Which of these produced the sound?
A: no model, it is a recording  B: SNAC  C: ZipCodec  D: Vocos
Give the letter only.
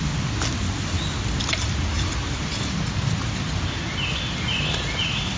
A